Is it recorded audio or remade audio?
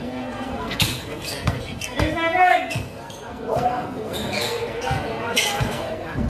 remade